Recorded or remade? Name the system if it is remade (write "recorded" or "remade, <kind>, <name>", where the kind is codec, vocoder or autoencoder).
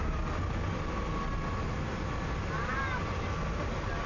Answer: recorded